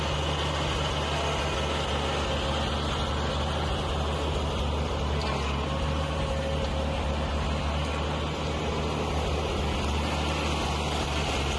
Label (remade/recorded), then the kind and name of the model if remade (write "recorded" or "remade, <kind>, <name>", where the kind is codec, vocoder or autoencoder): recorded